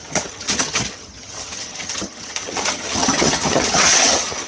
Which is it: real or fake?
fake